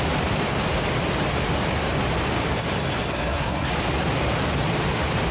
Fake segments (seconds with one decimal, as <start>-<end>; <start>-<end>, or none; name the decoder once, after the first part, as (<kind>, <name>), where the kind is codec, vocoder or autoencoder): 3.1-3.7 (codec, SNAC)